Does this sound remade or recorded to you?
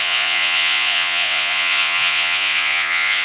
remade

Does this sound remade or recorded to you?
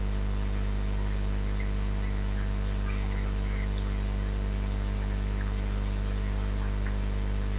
recorded